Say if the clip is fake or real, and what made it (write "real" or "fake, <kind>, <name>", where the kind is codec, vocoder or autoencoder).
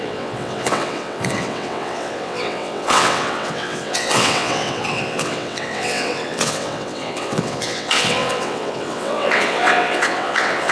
fake, vocoder, WaveNeXt